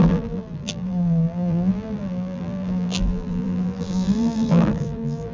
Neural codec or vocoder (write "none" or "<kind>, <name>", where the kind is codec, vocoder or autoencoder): vocoder, BigVGAN v2